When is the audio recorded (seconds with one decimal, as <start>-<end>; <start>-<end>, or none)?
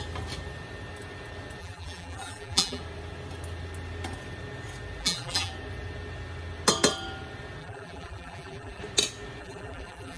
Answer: 0.0-1.6; 2.8-5.0; 5.5-7.6; 8.8-9.4